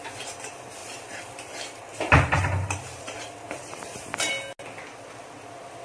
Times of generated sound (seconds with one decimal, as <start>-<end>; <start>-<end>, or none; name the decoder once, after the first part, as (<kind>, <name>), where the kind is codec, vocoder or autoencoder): 0.8-4.3 (vocoder, BigVGAN v2)